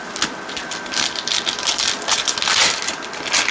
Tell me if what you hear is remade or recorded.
recorded